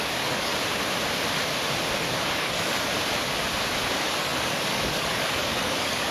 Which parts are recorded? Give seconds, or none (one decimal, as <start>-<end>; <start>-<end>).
0.5-2.1; 2.9-3.9